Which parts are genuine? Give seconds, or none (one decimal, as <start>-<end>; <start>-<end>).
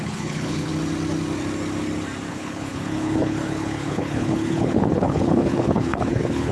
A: 0.7-2.3